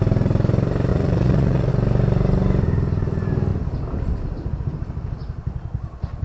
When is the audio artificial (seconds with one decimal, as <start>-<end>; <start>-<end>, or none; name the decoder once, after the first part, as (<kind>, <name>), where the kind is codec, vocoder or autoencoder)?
0.9-1.7 (vocoder, Vocos)